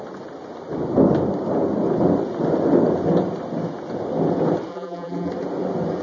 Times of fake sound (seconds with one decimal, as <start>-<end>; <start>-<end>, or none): 4.7-5.3